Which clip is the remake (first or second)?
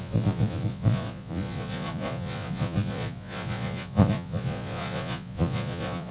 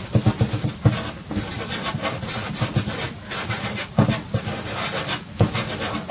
first